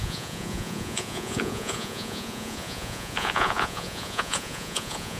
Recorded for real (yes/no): no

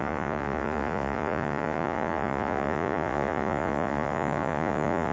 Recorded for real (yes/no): no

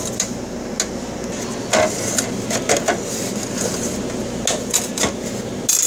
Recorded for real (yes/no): yes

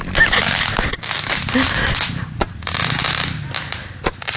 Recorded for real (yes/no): yes